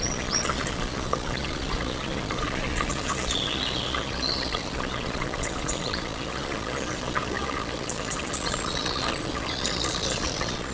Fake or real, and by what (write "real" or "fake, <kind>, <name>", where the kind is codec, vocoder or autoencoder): fake, vocoder, Vocos